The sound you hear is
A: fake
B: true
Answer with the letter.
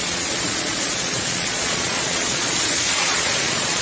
A